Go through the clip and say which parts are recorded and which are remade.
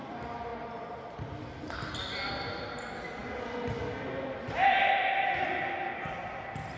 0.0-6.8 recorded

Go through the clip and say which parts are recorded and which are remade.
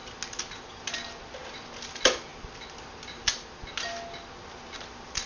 0.0-5.3 recorded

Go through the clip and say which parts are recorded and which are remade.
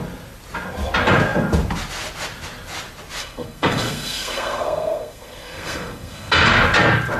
0.0-3.2 recorded; 3.2-6.3 remade; 6.3-7.2 recorded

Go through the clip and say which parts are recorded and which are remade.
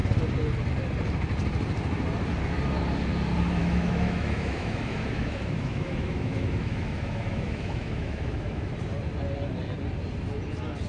0.0-3.6 recorded; 3.6-8.7 remade; 8.7-10.9 recorded